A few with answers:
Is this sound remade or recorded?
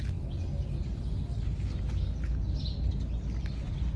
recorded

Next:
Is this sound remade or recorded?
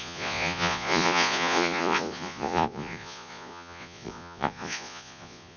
remade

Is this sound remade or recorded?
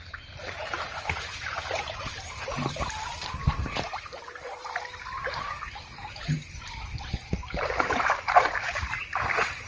remade